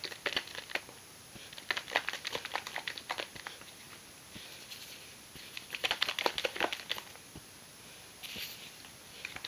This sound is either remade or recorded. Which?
recorded